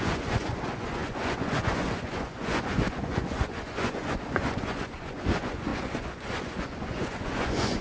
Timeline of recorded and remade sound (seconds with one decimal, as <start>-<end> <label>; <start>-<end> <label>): 0.0-7.8 remade